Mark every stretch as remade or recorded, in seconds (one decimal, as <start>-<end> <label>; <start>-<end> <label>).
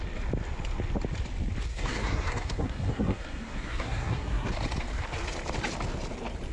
0.0-1.7 recorded; 1.7-4.5 remade; 4.5-6.5 recorded